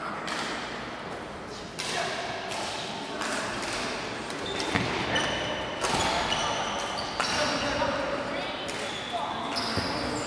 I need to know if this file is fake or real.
real